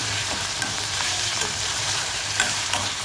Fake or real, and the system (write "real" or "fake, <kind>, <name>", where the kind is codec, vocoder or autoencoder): fake, vocoder, BigVGAN v2